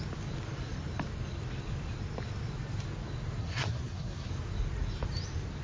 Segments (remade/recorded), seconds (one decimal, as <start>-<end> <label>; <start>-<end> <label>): 0.0-3.4 recorded; 3.4-4.3 remade; 4.3-5.6 recorded